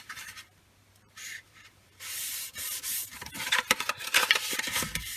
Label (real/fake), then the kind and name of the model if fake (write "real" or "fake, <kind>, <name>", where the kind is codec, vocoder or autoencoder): fake, vocoder, BigVGAN v2